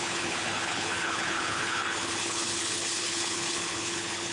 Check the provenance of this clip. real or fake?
fake